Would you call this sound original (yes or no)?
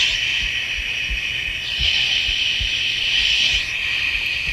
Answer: yes